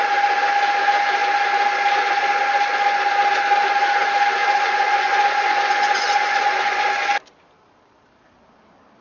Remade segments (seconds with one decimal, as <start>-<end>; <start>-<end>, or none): 4.4-6.9